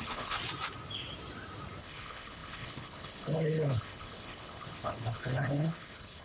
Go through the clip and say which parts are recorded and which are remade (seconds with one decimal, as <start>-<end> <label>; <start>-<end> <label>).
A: 0.0-0.4 remade; 0.4-1.8 recorded; 1.8-6.2 remade